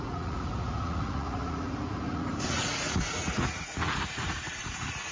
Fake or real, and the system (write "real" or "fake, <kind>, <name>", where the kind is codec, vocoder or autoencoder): fake, vocoder, Vocos